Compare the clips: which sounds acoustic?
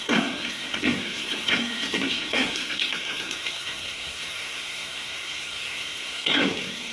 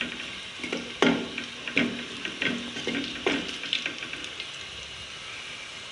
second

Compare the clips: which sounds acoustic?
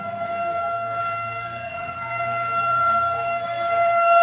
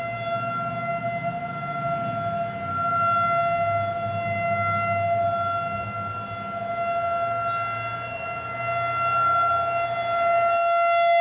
second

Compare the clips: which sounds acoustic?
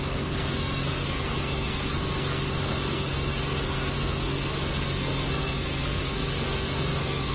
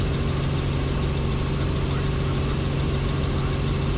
second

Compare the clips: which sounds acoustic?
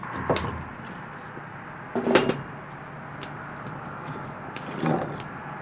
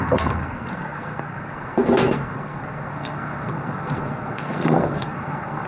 first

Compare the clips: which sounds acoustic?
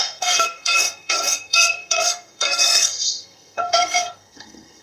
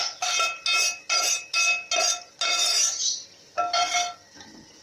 second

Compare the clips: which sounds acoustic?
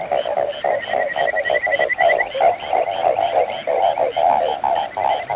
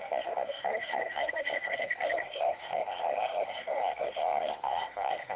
first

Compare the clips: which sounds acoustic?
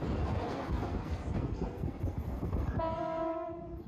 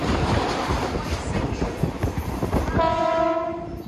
second